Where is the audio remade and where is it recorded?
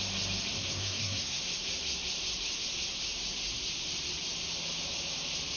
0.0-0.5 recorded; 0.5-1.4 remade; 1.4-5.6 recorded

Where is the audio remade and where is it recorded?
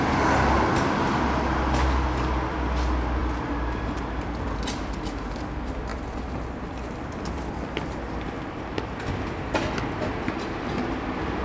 0.0-11.4 recorded